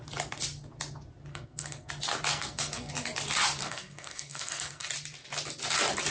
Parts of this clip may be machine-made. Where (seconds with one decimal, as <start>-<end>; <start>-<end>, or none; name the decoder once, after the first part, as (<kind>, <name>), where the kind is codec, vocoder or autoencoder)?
1.3-1.9 (codec, SNAC); 2.3-2.9; 3.6-4.9